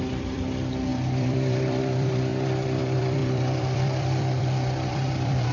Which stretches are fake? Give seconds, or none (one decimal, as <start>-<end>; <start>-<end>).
0.0-5.5